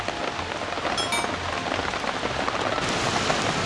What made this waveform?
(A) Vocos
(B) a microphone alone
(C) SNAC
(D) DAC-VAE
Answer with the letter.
B